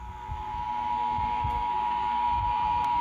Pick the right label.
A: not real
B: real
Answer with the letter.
A